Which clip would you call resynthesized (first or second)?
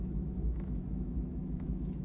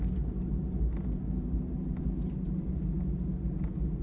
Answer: first